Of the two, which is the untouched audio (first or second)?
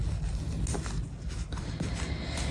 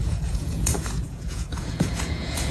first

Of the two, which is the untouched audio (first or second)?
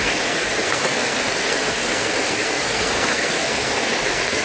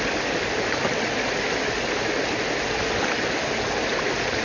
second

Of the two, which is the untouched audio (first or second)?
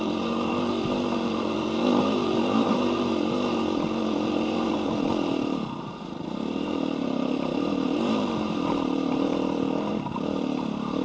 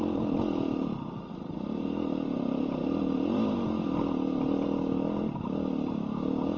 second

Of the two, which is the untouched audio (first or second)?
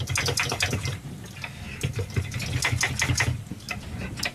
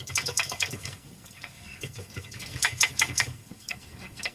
first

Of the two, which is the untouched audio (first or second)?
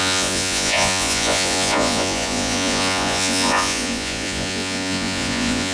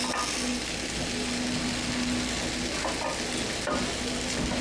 second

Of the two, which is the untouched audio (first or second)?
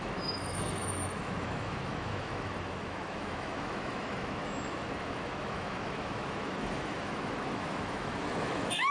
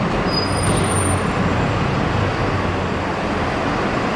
second